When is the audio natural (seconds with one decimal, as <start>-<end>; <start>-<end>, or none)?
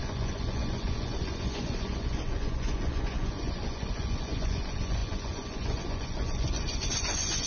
none